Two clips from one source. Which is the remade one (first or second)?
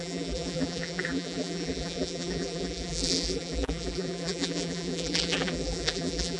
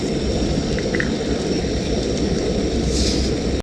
first